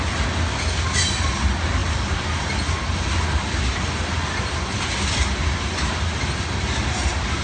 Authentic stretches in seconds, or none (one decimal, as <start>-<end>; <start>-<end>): 0.0-7.4